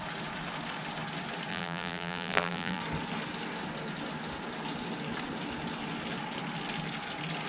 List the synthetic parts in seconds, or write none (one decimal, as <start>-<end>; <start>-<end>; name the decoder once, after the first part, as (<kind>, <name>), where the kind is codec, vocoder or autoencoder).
1.5-2.8 (vocoder, BigVGAN v2)